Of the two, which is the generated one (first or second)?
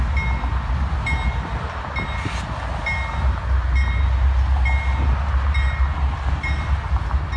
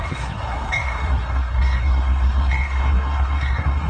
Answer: second